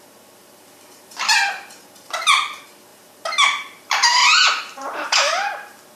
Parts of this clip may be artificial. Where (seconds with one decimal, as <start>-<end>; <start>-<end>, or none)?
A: 0.4-1.8; 2.9-6.0

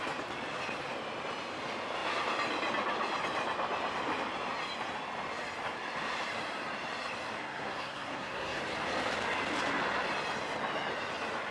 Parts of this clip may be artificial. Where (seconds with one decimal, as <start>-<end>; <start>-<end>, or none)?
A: 7.4-8.6